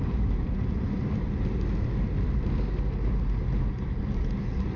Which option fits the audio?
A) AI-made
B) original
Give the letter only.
B